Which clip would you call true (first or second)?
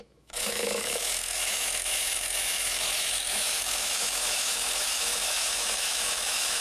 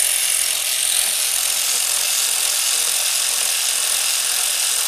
second